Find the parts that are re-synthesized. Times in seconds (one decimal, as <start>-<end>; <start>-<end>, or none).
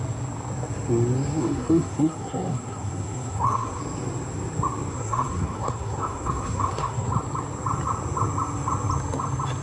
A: 1.4-3.8; 4.9-7.1